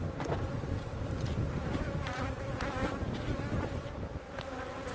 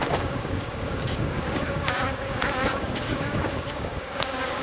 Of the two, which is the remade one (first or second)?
second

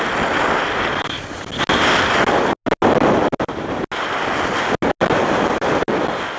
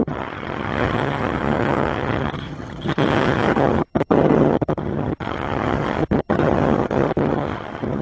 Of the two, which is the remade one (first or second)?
second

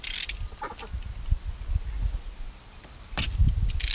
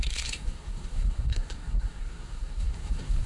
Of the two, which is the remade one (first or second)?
second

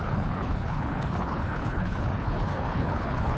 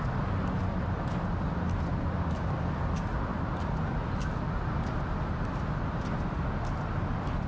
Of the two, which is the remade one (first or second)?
first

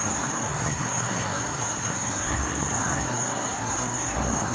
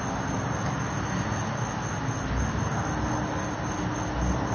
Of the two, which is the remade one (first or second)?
first